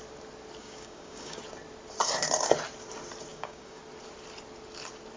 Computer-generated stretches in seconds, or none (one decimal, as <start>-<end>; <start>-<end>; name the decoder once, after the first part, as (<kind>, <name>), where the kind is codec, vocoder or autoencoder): 0.6-1.4 (codec, DAC); 3.3-3.8